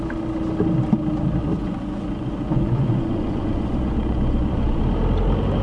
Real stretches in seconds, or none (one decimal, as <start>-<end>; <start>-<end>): 0.0-1.4; 4.8-5.6